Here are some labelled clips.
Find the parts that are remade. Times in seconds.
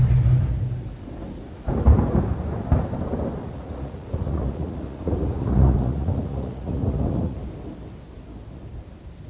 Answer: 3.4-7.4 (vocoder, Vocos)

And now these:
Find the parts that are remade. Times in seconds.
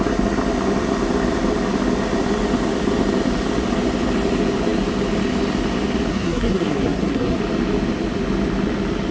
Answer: 6.1-7.4 (codec, SNAC)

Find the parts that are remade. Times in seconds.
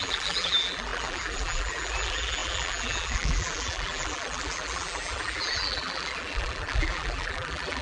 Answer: 0.0-7.8 (vocoder, BigVGAN v2)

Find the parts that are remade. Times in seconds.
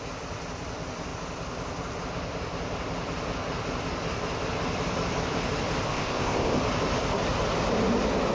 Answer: 5.9-6.6 (codec, ZipCodec)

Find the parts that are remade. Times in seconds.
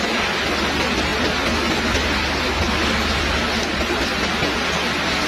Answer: none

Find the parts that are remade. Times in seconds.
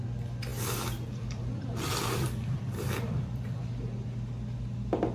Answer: 0.5-3.6 (vocoder, BigVGAN v2)